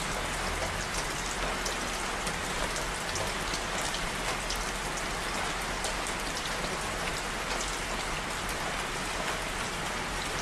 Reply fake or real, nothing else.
real